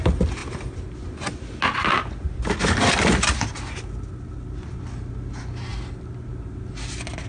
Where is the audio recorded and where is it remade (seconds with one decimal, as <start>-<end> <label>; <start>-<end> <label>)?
0.0-7.3 recorded